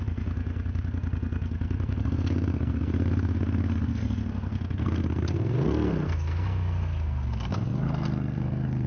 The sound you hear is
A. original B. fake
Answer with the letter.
B